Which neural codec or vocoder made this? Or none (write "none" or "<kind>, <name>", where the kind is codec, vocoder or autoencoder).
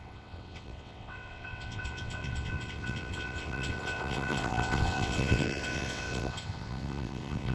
vocoder, WaveNeXt